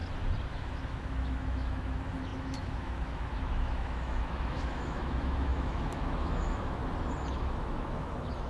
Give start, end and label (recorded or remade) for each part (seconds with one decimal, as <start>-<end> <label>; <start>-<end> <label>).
0.0-0.5 recorded; 0.5-6.8 remade; 6.8-7.3 recorded; 7.3-8.5 remade